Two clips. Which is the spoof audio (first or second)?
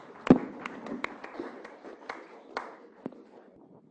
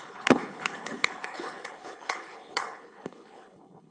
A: second